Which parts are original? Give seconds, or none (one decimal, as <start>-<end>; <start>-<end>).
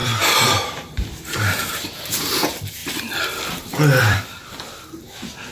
1.7-2.8; 4.7-5.5